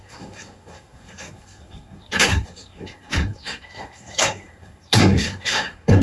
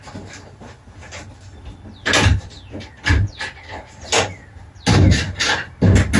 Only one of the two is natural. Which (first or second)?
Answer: second